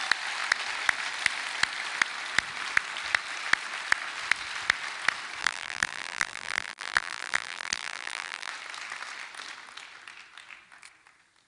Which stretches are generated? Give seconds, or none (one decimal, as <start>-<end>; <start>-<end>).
5.4-8.5